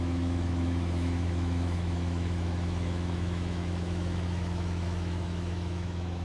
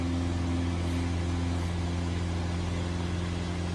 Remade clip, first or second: first